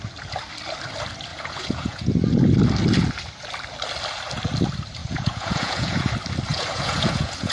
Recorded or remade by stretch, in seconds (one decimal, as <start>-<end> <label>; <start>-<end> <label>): 0.0-1.3 recorded; 1.3-2.1 remade; 2.1-5.0 recorded; 5.0-6.1 remade; 6.1-6.5 recorded; 6.5-7.5 remade